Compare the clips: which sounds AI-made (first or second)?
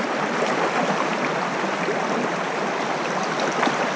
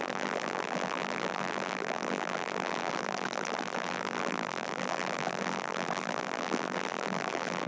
second